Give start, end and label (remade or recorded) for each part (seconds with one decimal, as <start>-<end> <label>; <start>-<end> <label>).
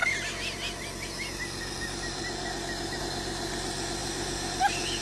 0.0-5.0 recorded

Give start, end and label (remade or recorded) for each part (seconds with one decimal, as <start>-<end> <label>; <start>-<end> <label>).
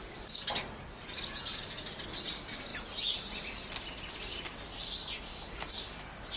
0.0-6.4 recorded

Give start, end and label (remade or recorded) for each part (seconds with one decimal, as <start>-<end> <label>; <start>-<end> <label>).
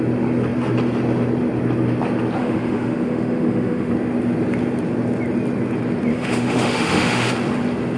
0.0-2.4 recorded; 2.4-3.9 remade; 3.9-6.1 recorded; 6.1-7.3 remade; 7.3-8.0 recorded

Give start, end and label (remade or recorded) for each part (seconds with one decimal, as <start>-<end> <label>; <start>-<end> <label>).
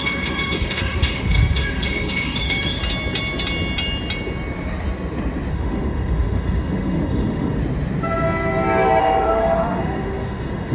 0.0-2.8 remade; 2.8-5.5 recorded; 5.5-7.6 remade; 7.6-9.0 recorded; 9.0-10.7 remade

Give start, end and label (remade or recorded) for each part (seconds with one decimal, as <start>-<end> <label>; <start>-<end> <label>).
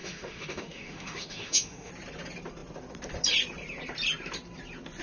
0.0-1.9 remade; 1.9-5.0 recorded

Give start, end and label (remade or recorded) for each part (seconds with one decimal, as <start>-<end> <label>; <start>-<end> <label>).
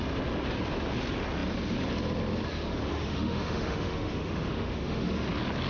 0.0-2.9 recorded; 2.9-5.1 remade; 5.1-5.7 recorded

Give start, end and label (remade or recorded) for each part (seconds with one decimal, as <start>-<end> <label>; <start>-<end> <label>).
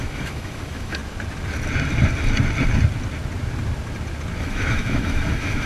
0.0-1.0 remade; 1.0-4.4 recorded; 4.4-5.7 remade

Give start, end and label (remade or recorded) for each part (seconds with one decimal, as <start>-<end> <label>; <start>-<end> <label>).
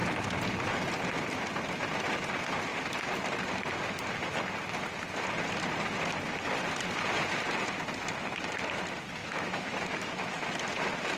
0.0-9.2 recorded; 9.2-10.4 remade; 10.4-11.2 recorded